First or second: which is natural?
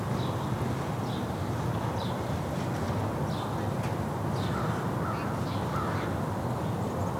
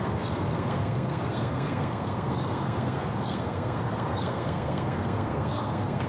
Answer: first